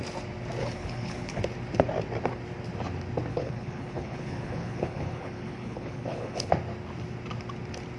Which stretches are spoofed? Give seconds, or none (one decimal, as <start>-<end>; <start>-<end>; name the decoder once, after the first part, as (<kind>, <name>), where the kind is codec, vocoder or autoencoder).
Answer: 0.6-1.4 (codec, HILCodec); 3.3-6.5